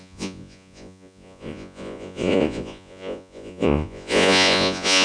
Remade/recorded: remade